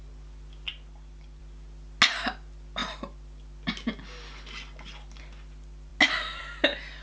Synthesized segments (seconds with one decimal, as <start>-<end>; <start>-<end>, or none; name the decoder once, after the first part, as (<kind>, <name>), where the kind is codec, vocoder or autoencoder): none